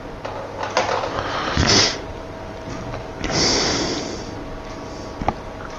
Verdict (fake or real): real